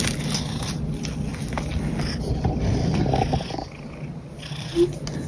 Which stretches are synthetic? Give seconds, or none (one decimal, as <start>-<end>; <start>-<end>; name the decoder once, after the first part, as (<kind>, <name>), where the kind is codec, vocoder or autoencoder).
none